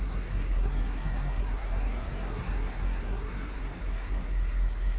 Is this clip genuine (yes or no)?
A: no